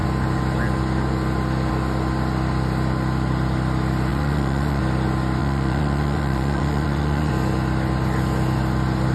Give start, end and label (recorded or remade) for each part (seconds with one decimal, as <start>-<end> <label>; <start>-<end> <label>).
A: 0.0-4.1 recorded; 4.1-4.8 remade; 4.8-5.4 recorded; 5.4-7.3 remade; 7.3-9.1 recorded